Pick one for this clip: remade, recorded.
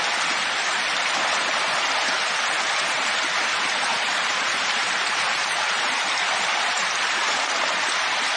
remade